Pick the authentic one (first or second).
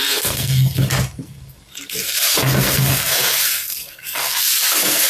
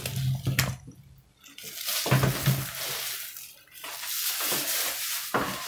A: second